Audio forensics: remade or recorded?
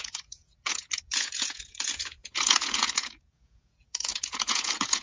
remade